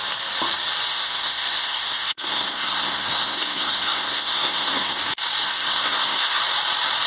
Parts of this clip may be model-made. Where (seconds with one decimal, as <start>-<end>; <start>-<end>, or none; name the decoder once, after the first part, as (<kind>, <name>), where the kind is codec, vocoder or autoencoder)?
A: 0.9-5.0 (codec, SNAC); 5.4-6.4